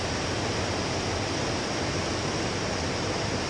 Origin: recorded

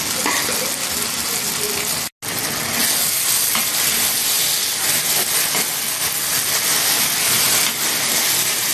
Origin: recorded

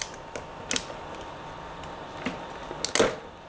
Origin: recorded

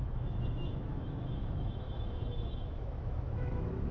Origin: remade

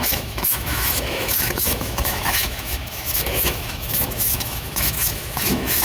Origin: remade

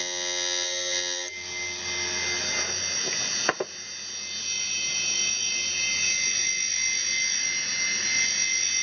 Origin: recorded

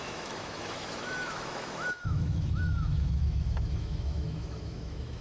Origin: remade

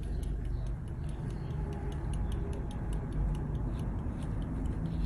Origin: recorded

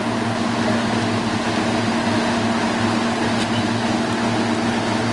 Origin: recorded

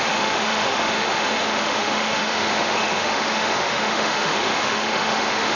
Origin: remade